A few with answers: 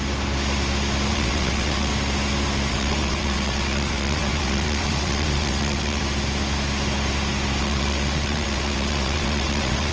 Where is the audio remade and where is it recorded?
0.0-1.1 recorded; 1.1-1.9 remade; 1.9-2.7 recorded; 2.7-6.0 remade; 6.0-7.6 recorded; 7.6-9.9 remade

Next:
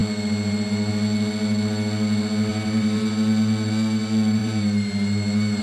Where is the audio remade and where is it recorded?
0.0-0.9 remade; 0.9-2.5 recorded; 2.5-3.1 remade; 3.1-4.4 recorded; 4.4-5.6 remade

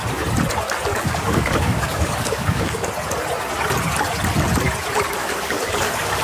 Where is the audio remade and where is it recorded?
0.0-0.9 recorded; 0.9-2.9 remade; 2.9-5.2 recorded; 5.2-6.2 remade

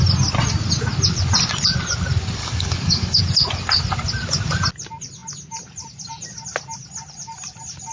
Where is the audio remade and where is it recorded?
0.0-2.4 recorded; 2.4-3.2 remade; 3.2-7.9 recorded

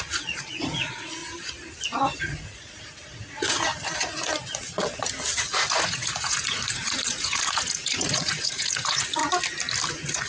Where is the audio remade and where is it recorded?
0.0-1.2 remade; 1.2-2.2 recorded; 2.2-3.7 remade; 3.7-5.4 recorded; 5.4-9.2 remade; 9.2-9.9 recorded; 9.9-10.3 remade

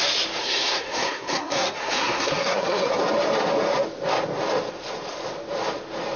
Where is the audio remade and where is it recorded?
0.0-0.4 recorded; 0.4-2.9 remade; 2.9-6.2 recorded

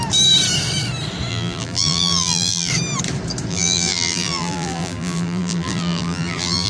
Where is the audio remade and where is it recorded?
0.0-1.3 recorded; 1.3-2.7 remade; 2.7-3.5 recorded; 3.5-6.7 remade

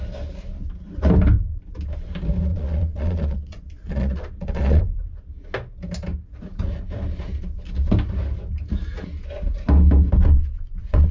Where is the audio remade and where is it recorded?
0.0-2.5 recorded; 2.5-4.8 remade; 4.8-10.3 recorded; 10.3-11.1 remade